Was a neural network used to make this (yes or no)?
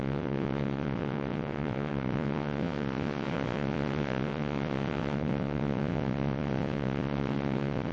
yes